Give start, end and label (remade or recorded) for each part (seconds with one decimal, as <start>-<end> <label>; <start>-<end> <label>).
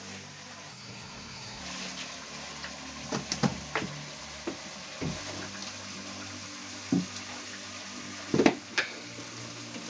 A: 0.0-0.7 recorded; 0.7-1.6 remade; 1.6-9.9 recorded